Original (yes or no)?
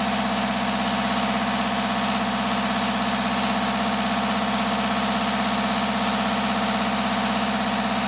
yes